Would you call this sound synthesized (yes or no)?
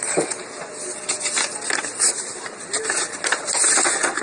no